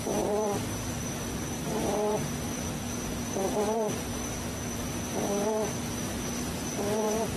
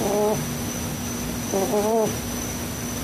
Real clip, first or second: second